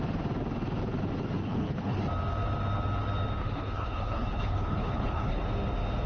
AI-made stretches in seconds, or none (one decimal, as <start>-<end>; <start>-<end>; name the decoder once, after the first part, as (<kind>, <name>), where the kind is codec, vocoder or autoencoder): 1.4-2.0 (codec, HILCodec); 3.4-5.4